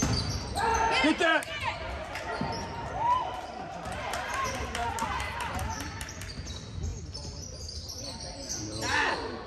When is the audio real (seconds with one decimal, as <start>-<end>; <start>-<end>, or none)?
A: 0.7-2.9; 4.8-5.5